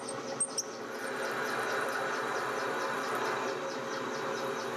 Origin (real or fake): real